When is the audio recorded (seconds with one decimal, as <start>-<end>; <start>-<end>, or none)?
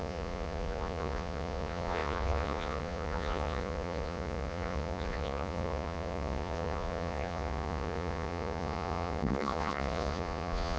none